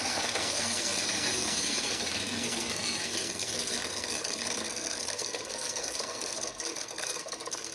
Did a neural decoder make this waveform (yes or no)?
yes